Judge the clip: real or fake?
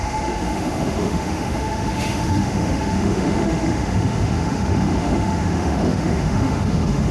fake